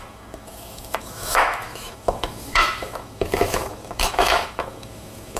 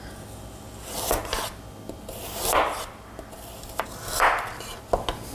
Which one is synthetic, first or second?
first